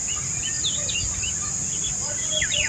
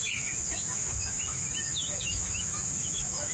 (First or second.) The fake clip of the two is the second